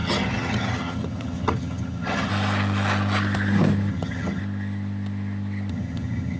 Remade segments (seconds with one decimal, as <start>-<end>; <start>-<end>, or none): 0.0-2.3; 3.9-4.4; 5.7-6.4